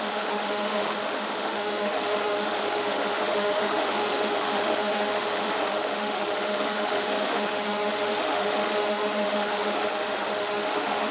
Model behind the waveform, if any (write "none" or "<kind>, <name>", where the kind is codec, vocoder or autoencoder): autoencoder, DAC-VAE